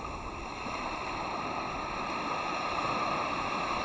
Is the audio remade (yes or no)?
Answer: no